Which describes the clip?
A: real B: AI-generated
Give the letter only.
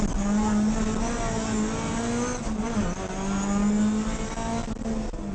A